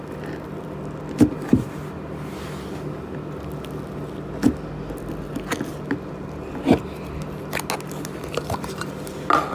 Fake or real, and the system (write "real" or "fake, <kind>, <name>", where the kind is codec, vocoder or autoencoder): real